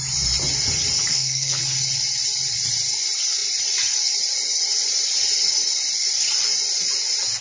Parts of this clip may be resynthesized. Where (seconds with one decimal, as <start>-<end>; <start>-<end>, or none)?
1.1-1.6